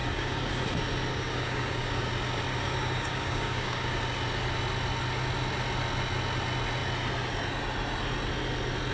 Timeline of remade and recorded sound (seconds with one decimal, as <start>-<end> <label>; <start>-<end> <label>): 0.0-0.5 remade; 0.5-1.1 recorded; 1.1-2.1 remade; 2.1-2.5 recorded; 2.5-4.0 remade; 4.0-8.9 recorded